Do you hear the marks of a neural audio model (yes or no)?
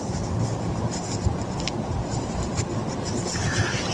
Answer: no